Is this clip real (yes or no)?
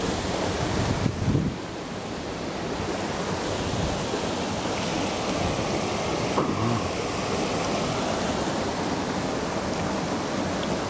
yes